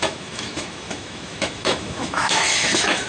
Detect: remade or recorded remade